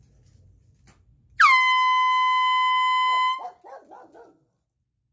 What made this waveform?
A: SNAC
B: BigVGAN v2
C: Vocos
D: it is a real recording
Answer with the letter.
D